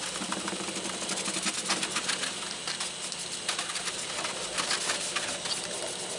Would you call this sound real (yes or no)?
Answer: yes